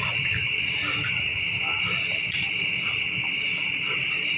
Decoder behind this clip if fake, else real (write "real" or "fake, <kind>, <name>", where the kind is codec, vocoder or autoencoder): real